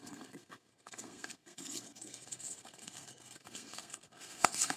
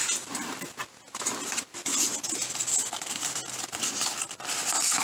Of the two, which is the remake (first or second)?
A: first